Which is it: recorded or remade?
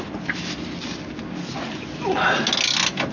recorded